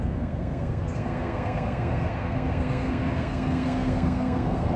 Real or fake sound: fake